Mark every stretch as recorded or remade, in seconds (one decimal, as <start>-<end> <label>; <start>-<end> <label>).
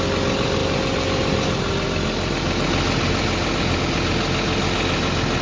0.0-5.4 recorded